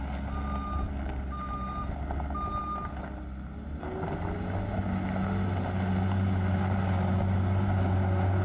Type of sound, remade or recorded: recorded